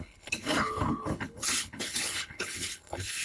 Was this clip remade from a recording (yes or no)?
yes